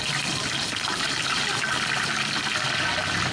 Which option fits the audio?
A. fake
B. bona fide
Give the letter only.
B